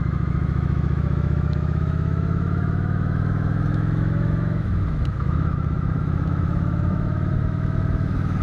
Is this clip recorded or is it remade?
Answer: remade